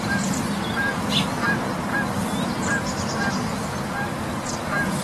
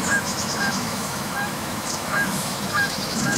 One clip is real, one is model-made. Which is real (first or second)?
first